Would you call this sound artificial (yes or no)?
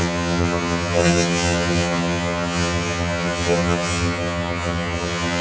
yes